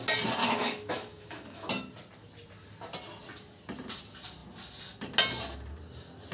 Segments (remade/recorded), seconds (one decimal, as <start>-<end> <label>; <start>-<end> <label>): 0.0-0.4 recorded; 0.4-1.7 remade; 1.7-6.3 recorded